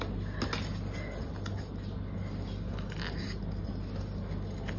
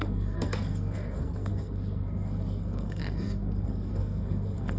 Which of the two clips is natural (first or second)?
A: first